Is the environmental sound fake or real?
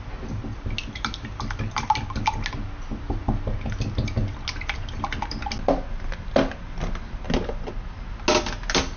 real